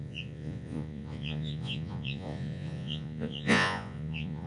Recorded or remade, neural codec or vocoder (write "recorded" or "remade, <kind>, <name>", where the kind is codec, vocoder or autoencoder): remade, vocoder, Vocos